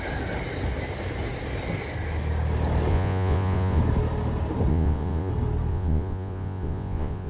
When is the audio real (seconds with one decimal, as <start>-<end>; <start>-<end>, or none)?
0.0-2.9; 3.8-4.7; 5.3-5.7

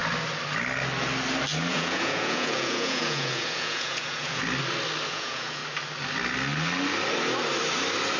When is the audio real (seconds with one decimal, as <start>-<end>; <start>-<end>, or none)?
0.0-1.7; 4.4-5.1; 5.6-8.2

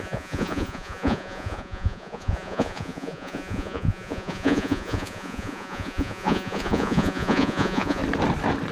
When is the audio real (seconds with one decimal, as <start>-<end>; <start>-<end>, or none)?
8.0-8.7

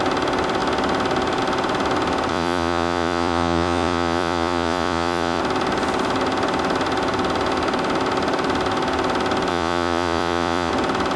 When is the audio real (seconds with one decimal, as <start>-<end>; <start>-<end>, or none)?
0.0-2.3; 5.4-9.5; 10.7-11.2

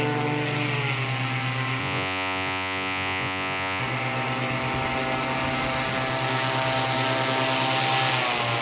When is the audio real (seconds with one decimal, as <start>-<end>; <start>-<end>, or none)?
0.0-1.8; 3.8-8.6

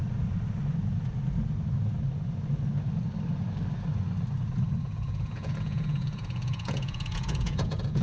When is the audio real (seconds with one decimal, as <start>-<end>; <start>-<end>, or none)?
0.0-4.8